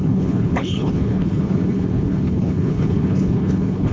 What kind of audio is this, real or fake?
fake